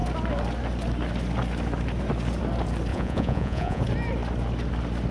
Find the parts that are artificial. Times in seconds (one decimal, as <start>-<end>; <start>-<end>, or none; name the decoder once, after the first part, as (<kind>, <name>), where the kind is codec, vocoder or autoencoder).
2.9-3.8 (vocoder, Vocos)